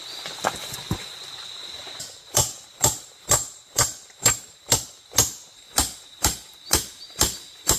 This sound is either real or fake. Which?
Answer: fake